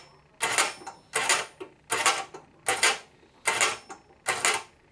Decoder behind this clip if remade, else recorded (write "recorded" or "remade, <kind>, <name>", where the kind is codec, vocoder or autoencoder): recorded